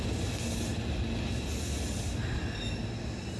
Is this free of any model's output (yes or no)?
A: yes